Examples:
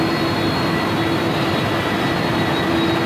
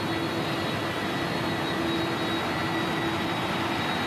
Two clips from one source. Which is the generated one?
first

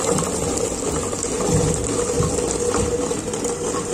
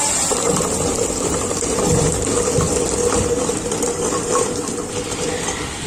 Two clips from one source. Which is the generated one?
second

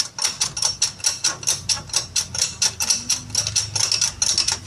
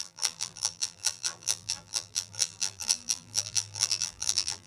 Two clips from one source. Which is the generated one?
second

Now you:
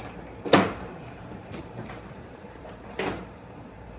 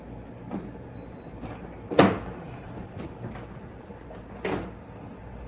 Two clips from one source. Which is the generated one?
first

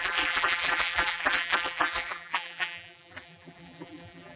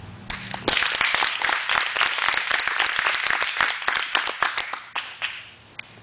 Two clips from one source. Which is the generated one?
first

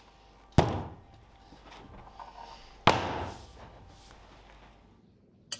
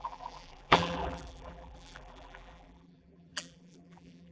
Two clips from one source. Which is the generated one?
second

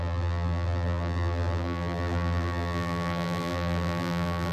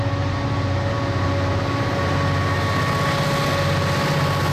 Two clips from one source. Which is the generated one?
first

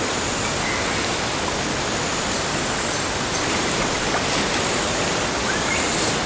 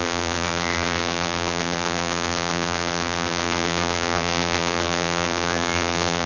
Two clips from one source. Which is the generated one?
second